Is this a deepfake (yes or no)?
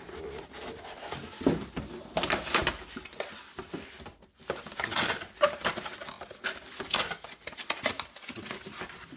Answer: no